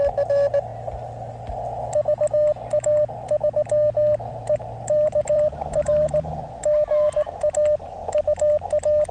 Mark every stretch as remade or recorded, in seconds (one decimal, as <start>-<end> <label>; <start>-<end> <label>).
0.0-4.3 recorded; 4.3-6.4 remade; 6.4-9.1 recorded